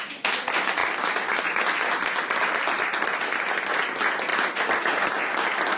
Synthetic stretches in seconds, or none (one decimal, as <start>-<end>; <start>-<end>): none